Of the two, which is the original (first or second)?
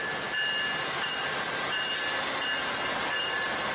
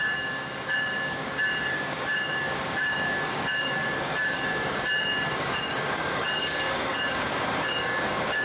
first